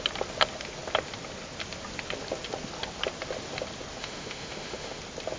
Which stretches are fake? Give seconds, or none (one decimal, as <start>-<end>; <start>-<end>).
4.0-5.0